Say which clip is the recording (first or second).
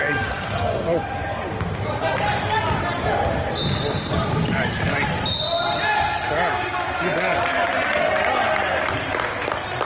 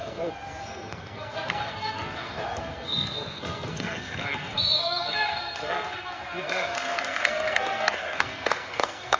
first